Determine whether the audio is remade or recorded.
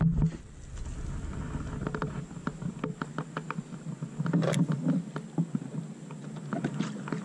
recorded